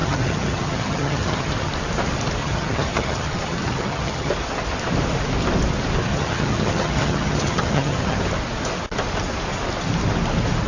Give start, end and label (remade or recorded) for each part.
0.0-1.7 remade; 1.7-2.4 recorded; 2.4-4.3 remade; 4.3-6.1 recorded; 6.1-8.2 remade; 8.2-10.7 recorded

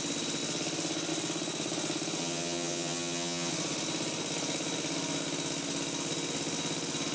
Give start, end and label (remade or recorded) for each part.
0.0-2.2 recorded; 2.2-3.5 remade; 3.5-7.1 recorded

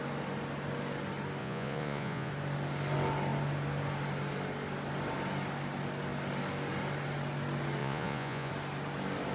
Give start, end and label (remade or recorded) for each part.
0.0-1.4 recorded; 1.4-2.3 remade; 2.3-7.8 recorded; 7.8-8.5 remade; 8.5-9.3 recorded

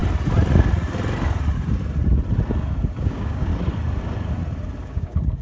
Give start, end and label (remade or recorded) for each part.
0.0-3.0 recorded; 3.0-3.5 remade; 3.5-4.8 recorded; 4.8-5.4 remade

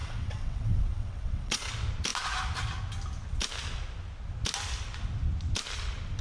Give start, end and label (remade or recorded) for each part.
0.0-1.7 remade; 1.7-6.2 recorded